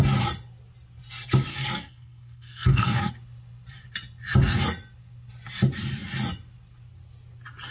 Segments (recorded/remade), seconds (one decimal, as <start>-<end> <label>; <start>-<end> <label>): 0.0-1.5 recorded; 1.5-3.1 remade; 3.1-7.7 recorded